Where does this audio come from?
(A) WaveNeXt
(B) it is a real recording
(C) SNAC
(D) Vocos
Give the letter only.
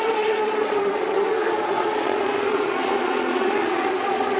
D